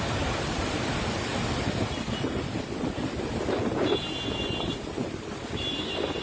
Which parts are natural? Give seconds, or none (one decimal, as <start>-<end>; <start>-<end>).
0.0-6.2